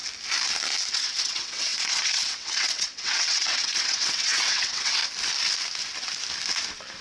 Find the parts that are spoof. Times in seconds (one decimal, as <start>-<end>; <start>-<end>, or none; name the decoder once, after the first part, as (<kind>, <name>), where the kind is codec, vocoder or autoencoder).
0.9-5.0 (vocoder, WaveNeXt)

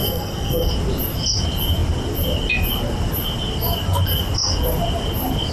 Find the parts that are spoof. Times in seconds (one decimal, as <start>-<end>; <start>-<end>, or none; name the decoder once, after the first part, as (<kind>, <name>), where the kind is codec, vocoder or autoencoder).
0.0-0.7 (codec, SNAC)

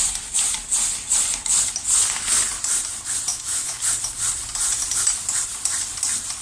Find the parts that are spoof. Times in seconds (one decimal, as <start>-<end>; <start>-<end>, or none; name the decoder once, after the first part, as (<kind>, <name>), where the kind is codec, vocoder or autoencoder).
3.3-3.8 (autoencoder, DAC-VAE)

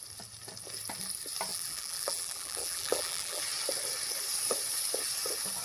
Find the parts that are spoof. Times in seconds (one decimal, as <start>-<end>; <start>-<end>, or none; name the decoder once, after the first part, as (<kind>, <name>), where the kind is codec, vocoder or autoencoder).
1.5-3.4 (vocoder, BigVGAN v2)